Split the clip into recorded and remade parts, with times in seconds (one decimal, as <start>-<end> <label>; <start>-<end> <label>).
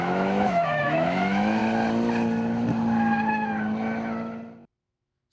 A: 0.0-1.6 remade; 1.6-4.8 recorded; 4.8-5.3 remade